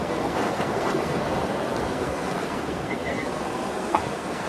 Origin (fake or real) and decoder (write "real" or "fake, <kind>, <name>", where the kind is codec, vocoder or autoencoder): fake, codec, SNAC